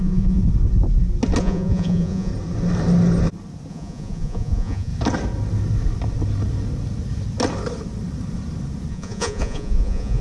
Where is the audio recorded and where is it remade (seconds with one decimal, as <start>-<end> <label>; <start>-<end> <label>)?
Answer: 0.0-0.4 remade; 0.4-1.4 recorded; 1.4-2.3 remade; 2.3-3.7 recorded; 3.7-4.9 remade; 4.9-8.9 recorded; 8.9-10.2 remade